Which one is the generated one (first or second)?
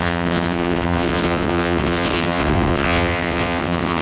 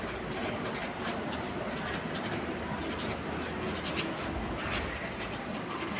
first